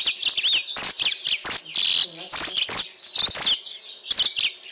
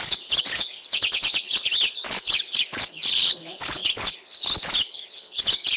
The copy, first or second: second